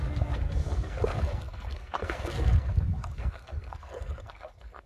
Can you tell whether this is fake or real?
fake